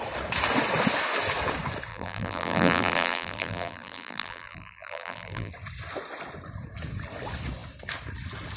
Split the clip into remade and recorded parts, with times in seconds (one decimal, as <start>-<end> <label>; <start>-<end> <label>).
0.0-1.9 recorded; 1.9-5.5 remade; 5.5-8.6 recorded